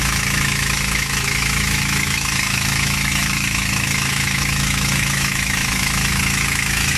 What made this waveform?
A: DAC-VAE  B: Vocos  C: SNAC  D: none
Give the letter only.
A